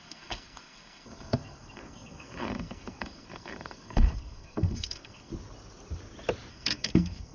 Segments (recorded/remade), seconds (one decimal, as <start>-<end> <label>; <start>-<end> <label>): 0.0-5.3 remade; 5.3-6.5 recorded; 6.5-7.3 remade